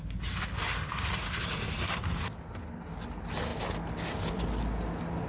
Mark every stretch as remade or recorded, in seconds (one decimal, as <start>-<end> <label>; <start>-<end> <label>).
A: 0.0-5.3 recorded